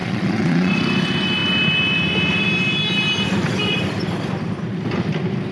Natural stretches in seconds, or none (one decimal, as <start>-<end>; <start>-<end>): 0.7-5.5